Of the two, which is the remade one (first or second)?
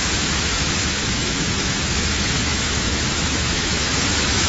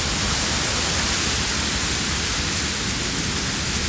first